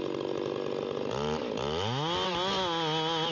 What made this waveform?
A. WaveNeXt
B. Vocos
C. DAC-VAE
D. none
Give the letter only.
D